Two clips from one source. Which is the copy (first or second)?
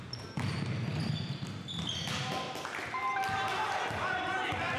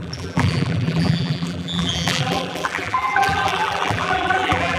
second